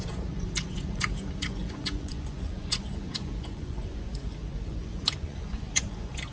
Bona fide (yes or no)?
no